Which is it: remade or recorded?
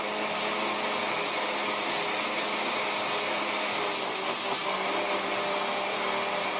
recorded